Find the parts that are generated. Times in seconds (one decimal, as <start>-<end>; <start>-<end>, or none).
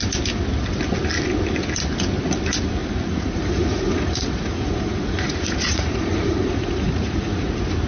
2.8-7.5